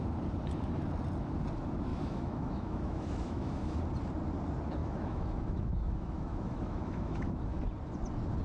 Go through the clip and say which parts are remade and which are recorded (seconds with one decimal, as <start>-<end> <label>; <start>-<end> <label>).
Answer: 0.0-1.9 recorded; 1.9-3.8 remade; 3.8-4.8 recorded; 4.8-7.6 remade; 7.6-8.4 recorded